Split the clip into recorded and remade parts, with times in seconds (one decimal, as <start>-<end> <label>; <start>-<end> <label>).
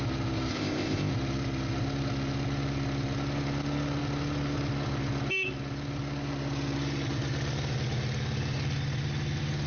0.0-0.5 recorded; 0.5-1.1 remade; 1.1-9.7 recorded